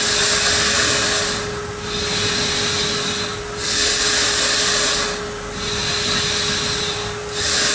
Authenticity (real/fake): real